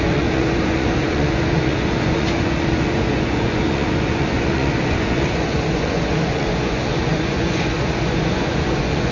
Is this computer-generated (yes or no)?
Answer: yes